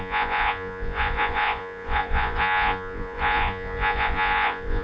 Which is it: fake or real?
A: fake